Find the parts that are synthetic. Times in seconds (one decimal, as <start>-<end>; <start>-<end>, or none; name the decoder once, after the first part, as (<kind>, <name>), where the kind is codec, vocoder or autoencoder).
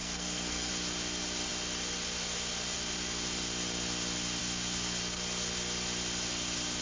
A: 0.0-0.7 (codec, SNAC)